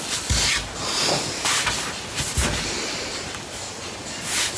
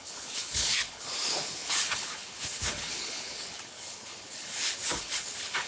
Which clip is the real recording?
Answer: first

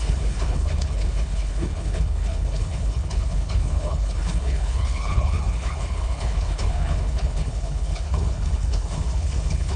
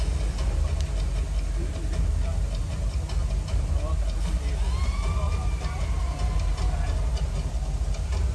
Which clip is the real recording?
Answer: second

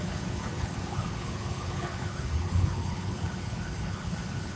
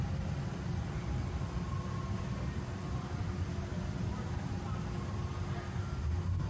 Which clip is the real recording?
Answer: second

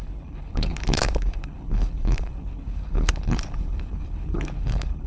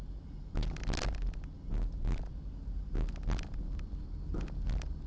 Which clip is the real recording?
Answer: second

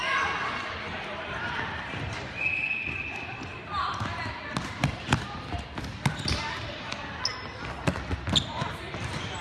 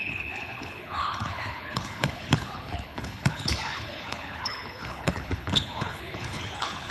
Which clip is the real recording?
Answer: first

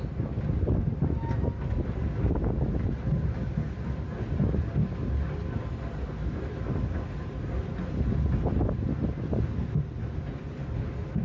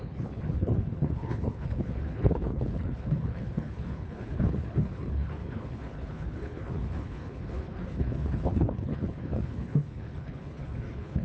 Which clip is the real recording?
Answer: first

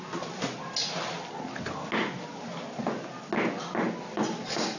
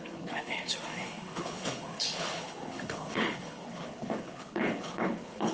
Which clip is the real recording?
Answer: first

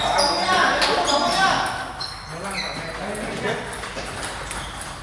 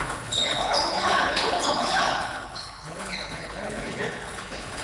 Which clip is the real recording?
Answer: first